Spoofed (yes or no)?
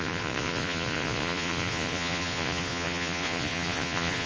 yes